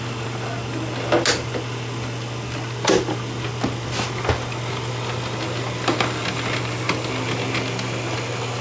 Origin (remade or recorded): recorded